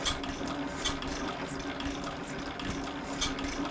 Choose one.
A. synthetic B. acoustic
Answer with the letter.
B